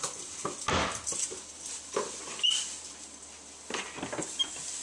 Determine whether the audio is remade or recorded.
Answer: recorded